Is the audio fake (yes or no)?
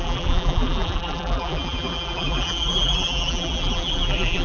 yes